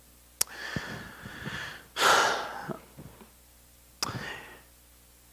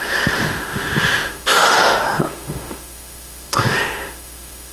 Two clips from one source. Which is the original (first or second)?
first